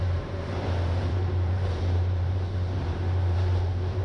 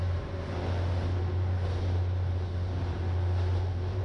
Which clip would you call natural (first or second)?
second